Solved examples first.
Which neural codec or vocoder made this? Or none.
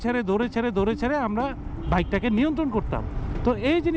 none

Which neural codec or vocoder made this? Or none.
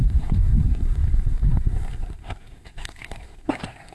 codec, SNAC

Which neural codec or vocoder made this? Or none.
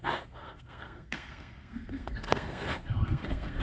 codec, SNAC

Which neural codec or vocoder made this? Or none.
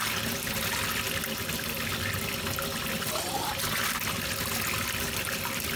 none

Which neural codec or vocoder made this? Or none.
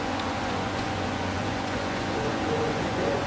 vocoder, Vocos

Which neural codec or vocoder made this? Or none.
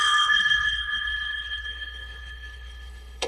codec, HILCodec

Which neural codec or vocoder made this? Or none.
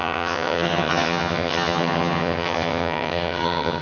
vocoder, HiFi-GAN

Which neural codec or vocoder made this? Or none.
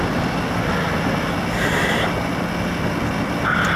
none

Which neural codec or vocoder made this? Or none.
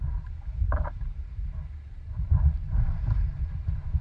vocoder, BigVGAN v2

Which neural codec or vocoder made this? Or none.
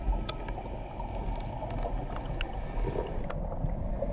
none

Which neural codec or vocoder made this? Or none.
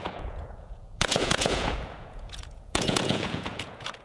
vocoder, Vocos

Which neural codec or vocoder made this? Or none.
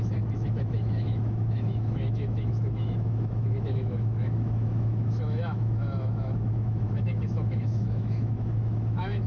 autoencoder, DAC-VAE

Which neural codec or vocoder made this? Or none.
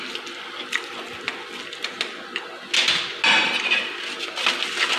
none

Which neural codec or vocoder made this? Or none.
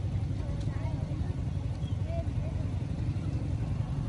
none